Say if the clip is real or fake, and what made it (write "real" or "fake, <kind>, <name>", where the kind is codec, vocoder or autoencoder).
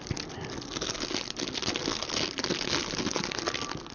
real